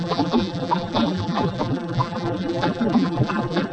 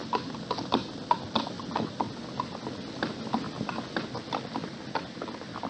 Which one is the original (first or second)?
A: second